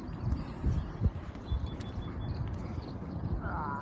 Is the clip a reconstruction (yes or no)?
no